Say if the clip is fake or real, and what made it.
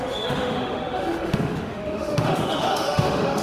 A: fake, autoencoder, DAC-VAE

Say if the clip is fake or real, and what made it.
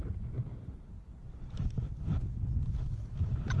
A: real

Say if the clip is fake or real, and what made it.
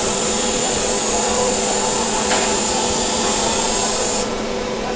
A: fake, vocoder, Vocos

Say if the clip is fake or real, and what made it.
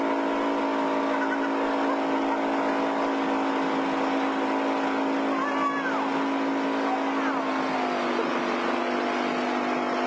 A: real